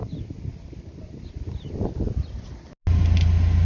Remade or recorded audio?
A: recorded